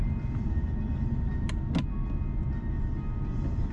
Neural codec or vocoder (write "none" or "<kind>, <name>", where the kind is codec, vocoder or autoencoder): none